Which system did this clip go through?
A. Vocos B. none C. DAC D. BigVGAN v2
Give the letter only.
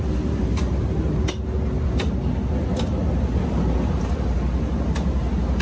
B